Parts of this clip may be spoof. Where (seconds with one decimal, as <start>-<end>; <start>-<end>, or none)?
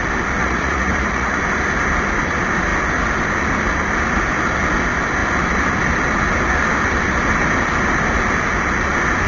0.4-1.4